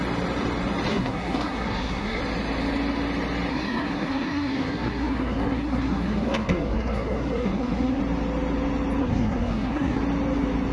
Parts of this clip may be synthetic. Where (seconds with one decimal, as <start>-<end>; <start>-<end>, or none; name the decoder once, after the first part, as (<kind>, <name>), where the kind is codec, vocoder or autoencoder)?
0.9-2.2 (codec, SNAC); 3.5-8.0; 9.0-10.0